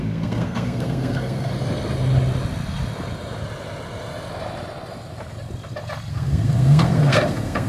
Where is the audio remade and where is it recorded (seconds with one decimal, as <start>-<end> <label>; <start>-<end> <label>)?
0.0-1.5 remade; 1.5-6.1 recorded; 6.1-7.7 remade